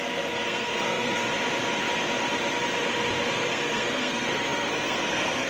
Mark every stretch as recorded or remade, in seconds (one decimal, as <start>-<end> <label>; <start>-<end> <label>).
0.0-1.2 remade; 1.2-3.3 recorded; 3.3-5.5 remade